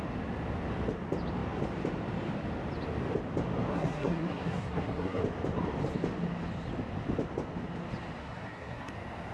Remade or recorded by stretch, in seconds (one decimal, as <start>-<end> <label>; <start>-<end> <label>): 0.0-3.7 recorded; 3.7-5.2 remade; 5.2-8.2 recorded; 8.2-8.9 remade; 8.9-9.3 recorded